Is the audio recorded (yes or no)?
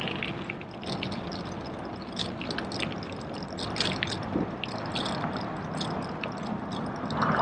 yes